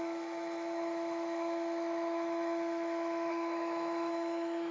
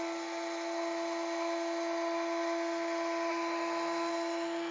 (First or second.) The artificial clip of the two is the first